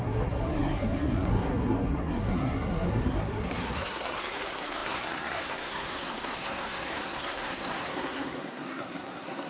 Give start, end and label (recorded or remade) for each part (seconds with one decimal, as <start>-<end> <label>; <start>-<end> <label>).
0.0-9.5 remade